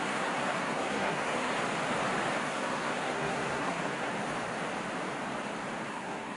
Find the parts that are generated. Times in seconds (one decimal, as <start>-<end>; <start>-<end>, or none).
0.0-1.5; 2.4-4.1; 5.9-6.4